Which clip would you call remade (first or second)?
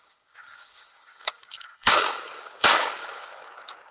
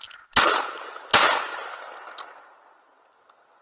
first